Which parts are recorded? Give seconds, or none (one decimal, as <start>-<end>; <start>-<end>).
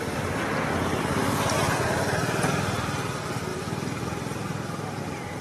0.0-5.4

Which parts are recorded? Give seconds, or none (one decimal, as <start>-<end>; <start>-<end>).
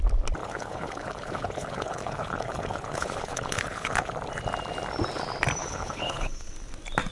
0.0-0.4; 4.1-5.6; 6.5-7.1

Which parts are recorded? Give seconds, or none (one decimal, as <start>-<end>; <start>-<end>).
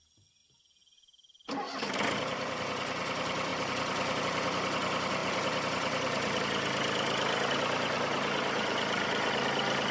0.0-3.5; 4.2-5.2; 6.4-9.9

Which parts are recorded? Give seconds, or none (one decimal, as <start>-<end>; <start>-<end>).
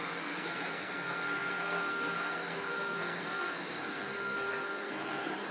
none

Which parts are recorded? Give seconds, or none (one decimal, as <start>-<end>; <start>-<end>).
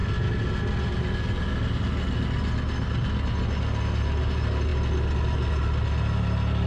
0.0-6.7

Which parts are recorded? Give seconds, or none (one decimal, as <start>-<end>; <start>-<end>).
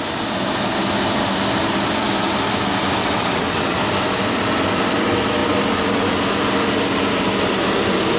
0.0-3.0; 3.8-8.2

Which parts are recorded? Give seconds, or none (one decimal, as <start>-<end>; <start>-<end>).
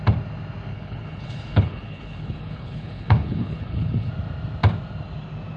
0.0-0.7; 4.1-5.6